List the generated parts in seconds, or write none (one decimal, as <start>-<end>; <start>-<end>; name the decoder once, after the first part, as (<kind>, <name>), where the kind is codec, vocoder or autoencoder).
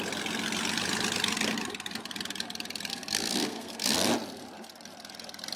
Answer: 2.9-4.1 (codec, SNAC)